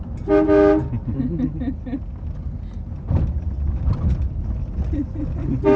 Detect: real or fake real